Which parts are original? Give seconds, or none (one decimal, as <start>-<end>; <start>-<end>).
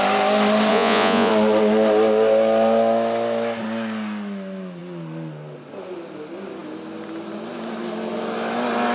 0.0-0.7; 1.3-8.9